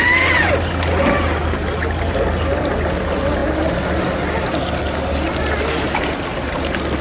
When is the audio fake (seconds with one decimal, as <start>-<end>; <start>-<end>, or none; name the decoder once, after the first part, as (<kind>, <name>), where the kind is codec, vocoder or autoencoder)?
none